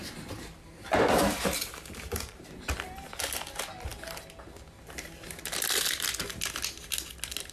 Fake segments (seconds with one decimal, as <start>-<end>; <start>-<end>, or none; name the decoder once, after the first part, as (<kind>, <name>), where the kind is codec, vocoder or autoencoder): 0.0-2.7 (vocoder, BigVGAN v2)